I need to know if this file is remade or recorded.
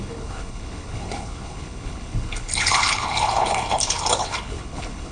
remade